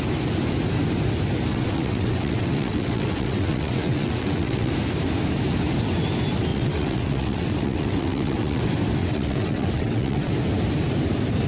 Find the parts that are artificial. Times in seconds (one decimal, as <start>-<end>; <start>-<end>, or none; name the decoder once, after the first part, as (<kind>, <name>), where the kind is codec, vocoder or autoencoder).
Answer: 1.5-4.7 (vocoder, WaveNeXt); 6.5-8.6; 9.0-10.3